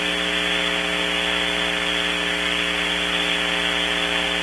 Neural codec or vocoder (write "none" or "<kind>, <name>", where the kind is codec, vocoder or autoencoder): none